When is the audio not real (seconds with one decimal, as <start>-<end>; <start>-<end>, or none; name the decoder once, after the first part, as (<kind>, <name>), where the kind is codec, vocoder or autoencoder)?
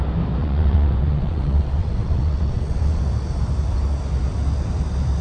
0.4-3.0 (vocoder, WaveNeXt)